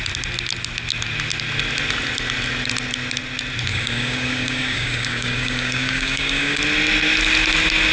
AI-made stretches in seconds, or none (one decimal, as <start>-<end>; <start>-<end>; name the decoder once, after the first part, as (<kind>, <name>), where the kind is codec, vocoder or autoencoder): 3.7-6.6 (codec, DAC)

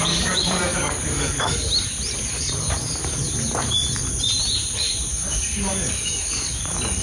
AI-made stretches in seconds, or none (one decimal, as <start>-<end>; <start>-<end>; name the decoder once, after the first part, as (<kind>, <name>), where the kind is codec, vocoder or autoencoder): 0.0-1.7 (codec, DAC); 2.3-3.2; 5.1-7.0